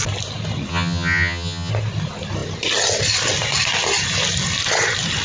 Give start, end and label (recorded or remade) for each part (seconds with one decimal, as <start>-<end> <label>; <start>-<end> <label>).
0.0-0.7 recorded; 0.7-1.7 remade; 1.7-5.2 recorded